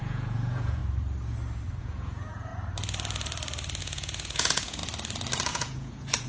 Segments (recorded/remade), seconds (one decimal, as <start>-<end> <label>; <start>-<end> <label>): 0.0-0.8 remade; 0.8-1.8 recorded; 1.8-2.5 remade; 2.5-3.8 recorded; 3.8-4.8 remade; 4.8-5.5 recorded; 5.5-6.3 remade